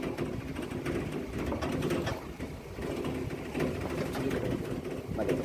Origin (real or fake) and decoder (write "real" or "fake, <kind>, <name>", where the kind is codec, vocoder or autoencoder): real